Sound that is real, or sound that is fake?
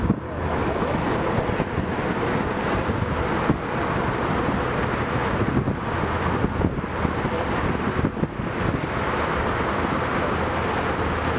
real